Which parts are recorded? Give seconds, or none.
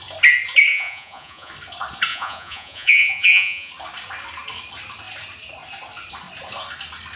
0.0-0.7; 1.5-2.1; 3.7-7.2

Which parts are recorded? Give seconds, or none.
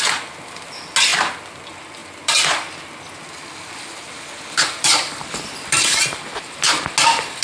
0.0-2.0; 6.2-7.4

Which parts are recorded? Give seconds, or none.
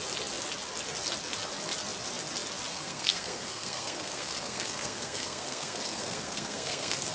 0.0-2.7